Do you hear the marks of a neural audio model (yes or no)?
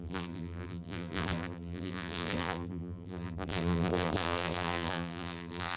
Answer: yes